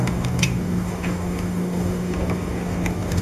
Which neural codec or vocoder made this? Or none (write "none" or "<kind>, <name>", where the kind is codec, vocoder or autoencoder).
codec, DAC